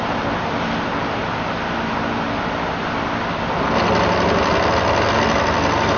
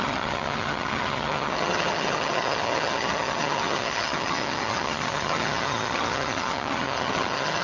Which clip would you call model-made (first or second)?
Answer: second